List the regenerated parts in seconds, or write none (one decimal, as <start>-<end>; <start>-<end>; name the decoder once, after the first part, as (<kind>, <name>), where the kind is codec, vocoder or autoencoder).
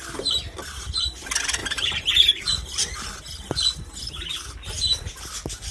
1.6-2.5 (vocoder, BigVGAN v2); 4.3-5.1